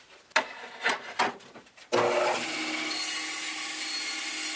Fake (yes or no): no